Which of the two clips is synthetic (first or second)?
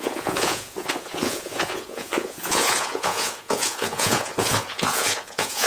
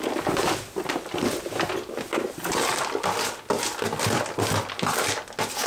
first